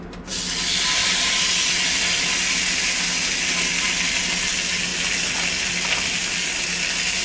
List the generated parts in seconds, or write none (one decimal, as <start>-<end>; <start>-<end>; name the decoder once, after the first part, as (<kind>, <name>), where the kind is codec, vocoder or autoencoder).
none